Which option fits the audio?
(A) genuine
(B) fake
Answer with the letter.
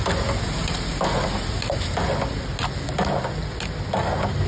A